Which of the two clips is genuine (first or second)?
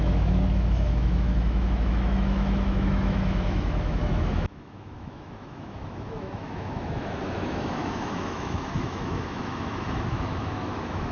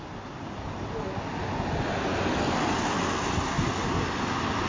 second